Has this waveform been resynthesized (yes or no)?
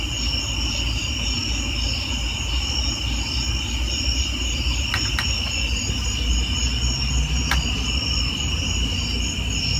no